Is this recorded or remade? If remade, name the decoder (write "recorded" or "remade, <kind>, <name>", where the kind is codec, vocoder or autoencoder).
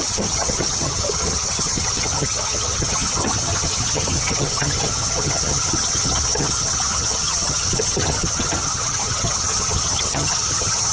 remade, vocoder, HiFi-GAN